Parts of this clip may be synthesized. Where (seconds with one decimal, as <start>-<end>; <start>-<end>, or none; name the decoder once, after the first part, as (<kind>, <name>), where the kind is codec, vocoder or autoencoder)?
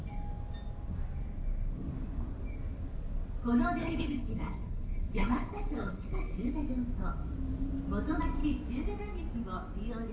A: 3.8-6.5 (codec, HILCodec)